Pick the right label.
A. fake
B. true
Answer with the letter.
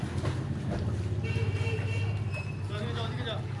B